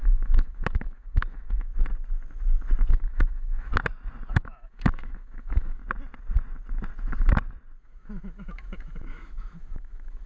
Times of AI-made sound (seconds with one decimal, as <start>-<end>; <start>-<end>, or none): 0.0-1.7; 2.9-3.7; 4.3-5.8; 7.8-10.3